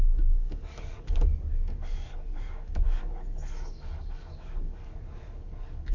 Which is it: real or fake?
fake